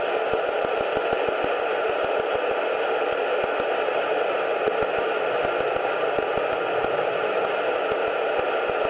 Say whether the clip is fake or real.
real